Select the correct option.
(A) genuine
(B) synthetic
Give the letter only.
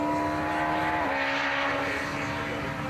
A